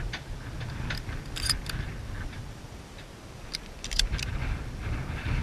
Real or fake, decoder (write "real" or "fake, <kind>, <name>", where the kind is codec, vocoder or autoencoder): real